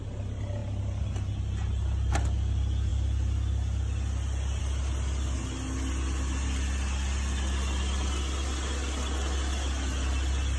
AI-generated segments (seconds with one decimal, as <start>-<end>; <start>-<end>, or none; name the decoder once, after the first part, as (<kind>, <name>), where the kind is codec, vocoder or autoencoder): none